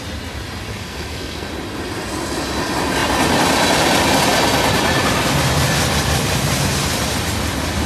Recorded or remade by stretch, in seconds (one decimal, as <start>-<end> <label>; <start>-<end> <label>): 0.0-0.7 recorded; 0.7-1.5 remade; 1.5-7.9 recorded